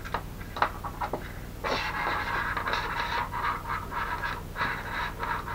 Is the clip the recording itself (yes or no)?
yes